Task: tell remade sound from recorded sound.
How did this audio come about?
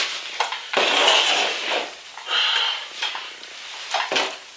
recorded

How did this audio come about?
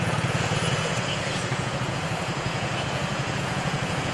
remade